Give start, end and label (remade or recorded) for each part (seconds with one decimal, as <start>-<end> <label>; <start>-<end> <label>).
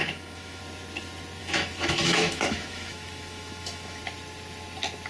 0.0-0.6 remade; 0.6-1.4 recorded; 1.4-4.0 remade; 4.0-5.1 recorded